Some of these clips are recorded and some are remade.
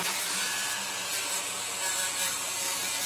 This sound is remade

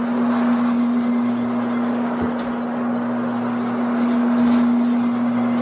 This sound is recorded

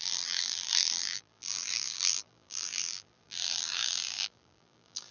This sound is remade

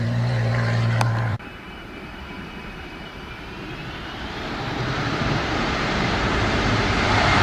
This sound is remade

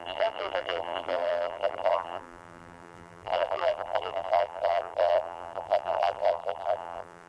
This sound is remade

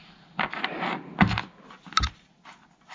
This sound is recorded